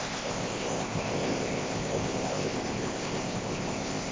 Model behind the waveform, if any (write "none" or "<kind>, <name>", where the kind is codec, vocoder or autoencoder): codec, ZipCodec